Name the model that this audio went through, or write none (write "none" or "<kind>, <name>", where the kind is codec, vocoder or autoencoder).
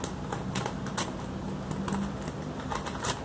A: none